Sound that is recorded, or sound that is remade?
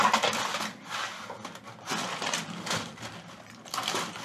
recorded